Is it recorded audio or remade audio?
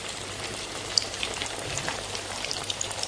remade